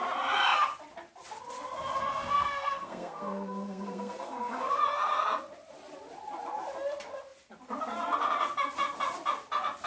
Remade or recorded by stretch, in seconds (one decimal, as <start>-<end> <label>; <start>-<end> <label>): 0.0-2.1 recorded; 2.1-4.8 remade; 4.8-9.9 recorded